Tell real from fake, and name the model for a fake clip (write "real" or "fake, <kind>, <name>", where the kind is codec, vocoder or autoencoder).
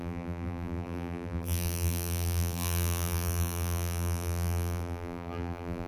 fake, vocoder, BigVGAN v2